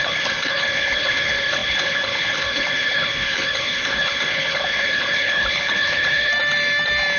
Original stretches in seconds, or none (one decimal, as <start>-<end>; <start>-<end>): 6.3-7.2